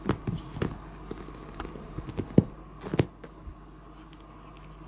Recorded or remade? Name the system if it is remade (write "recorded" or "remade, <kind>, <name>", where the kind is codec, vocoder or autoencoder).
recorded